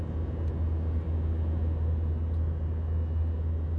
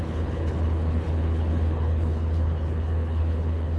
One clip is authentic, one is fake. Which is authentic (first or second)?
first